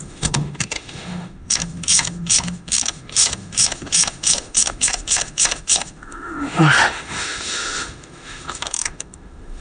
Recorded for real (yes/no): no